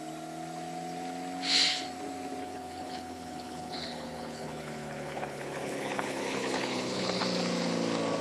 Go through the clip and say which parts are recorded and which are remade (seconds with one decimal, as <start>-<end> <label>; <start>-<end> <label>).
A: 0.0-2.4 recorded; 2.4-7.2 remade; 7.2-8.2 recorded